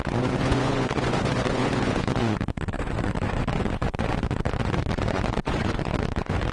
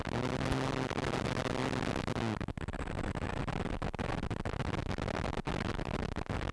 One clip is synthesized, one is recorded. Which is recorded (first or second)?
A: second